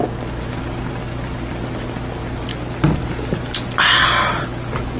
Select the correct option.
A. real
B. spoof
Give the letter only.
A